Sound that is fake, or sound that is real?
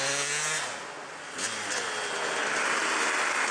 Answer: real